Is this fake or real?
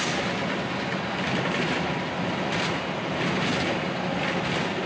real